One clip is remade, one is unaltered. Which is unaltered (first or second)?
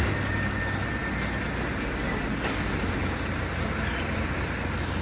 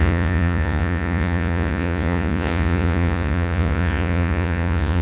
first